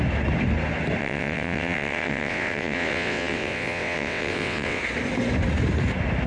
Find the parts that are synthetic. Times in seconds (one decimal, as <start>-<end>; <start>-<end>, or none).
1.0-4.8